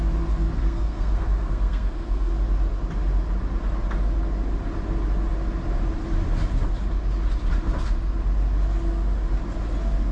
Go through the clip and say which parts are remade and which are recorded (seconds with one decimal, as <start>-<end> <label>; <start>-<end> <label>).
0.0-0.6 recorded; 0.6-2.3 remade; 2.3-10.1 recorded